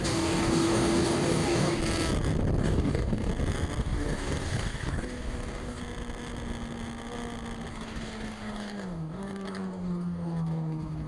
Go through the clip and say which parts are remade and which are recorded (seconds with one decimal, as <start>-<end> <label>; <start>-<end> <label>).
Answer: 0.0-1.8 remade; 1.8-2.6 recorded; 2.6-3.3 remade; 3.3-3.8 recorded; 3.8-5.8 remade; 5.8-7.7 recorded; 7.7-11.1 remade